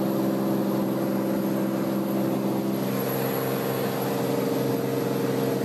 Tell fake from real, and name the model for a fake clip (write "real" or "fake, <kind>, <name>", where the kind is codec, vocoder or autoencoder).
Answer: real